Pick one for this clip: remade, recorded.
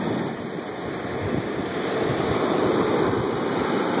recorded